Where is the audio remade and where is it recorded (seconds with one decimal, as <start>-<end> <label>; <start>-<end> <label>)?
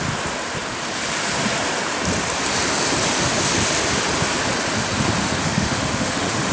0.0-5.4 recorded; 5.4-6.5 remade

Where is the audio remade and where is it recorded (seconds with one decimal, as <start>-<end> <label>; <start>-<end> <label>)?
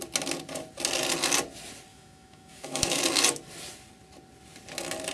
0.0-1.9 recorded; 1.9-3.0 remade; 3.0-5.1 recorded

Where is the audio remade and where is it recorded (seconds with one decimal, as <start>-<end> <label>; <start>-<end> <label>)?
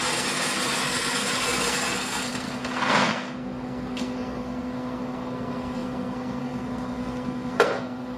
0.0-8.2 remade